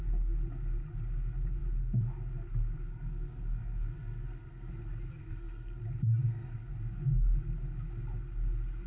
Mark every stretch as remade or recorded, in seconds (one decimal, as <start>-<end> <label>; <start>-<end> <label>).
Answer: 0.0-2.9 recorded; 2.9-4.7 remade; 4.7-5.2 recorded; 5.2-5.8 remade; 5.8-6.2 recorded; 6.2-6.7 remade; 6.7-8.9 recorded